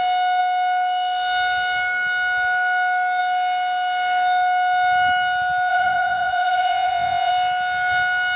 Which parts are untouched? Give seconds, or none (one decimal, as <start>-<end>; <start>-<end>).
0.0-5.7; 7.3-8.4